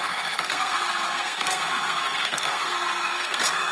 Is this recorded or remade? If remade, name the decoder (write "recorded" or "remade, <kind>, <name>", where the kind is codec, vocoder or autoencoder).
remade, codec, SNAC